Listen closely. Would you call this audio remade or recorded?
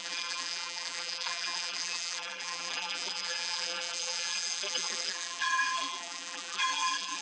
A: remade